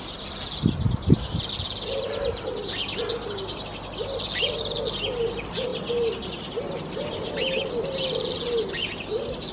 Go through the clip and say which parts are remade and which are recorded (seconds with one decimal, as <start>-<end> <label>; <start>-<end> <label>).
0.0-9.5 recorded